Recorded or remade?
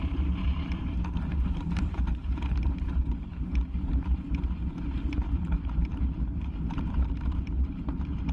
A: remade